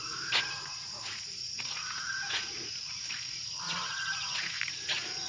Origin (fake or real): fake